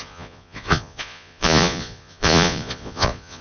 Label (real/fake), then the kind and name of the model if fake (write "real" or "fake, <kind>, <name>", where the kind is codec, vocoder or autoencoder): fake, vocoder, Vocos